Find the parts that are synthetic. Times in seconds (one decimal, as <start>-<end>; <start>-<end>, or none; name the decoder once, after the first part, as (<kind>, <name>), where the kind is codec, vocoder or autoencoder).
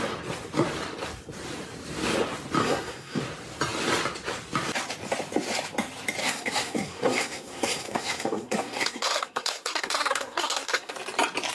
2.6-3.2 (codec, SNAC); 6.2-10.9